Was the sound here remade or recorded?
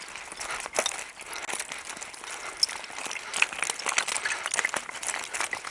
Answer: recorded